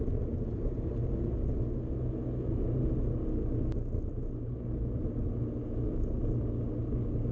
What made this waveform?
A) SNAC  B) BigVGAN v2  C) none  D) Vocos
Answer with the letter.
C